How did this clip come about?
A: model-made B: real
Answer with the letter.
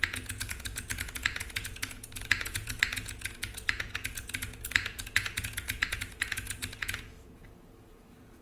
A